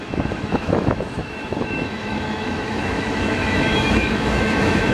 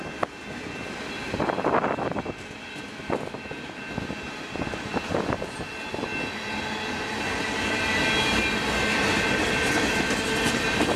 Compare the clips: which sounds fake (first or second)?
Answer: first